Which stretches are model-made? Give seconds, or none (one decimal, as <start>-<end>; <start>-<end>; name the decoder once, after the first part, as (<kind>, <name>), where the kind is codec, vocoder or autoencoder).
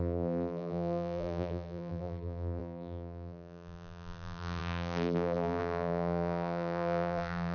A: 0.0-7.5 (vocoder, BigVGAN v2)